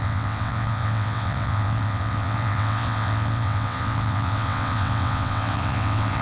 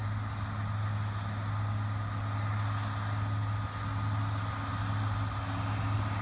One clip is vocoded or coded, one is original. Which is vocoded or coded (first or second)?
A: first